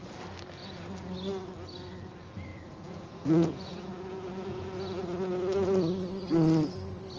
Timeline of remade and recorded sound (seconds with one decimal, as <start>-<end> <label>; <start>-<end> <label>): 0.0-2.5 recorded; 2.5-5.0 remade; 5.0-7.2 recorded